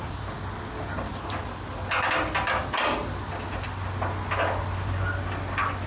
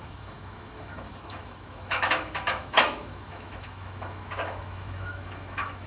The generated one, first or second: second